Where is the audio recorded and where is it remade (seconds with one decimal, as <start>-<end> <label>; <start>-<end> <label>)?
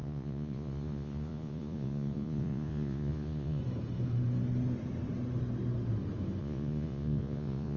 0.0-3.6 remade; 3.6-6.4 recorded; 6.4-7.8 remade